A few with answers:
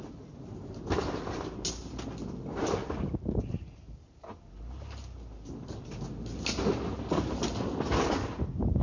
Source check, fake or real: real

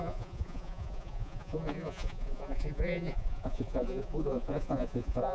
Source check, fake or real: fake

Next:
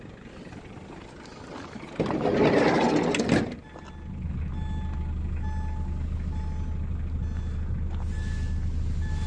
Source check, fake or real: real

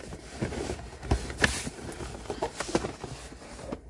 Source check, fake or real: fake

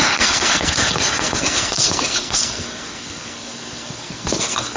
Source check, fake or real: fake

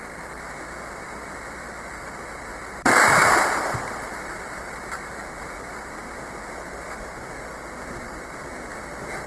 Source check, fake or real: real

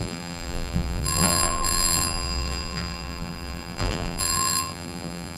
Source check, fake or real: fake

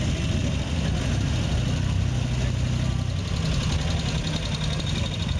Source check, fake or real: real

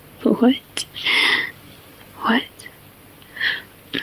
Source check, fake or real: real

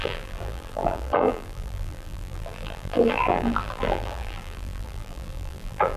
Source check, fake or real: fake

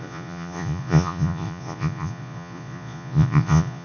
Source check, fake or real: fake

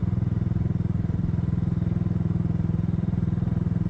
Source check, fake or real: fake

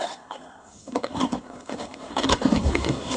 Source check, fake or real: fake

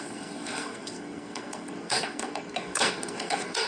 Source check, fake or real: fake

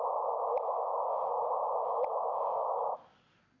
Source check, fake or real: real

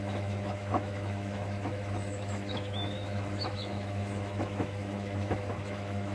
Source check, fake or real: fake